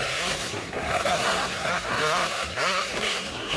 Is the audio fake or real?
fake